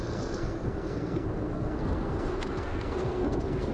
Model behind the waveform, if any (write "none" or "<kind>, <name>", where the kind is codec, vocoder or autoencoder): codec, SNAC